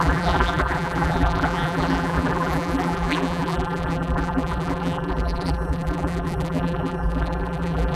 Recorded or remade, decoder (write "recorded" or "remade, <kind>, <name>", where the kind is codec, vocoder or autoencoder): remade, vocoder, BigVGAN v2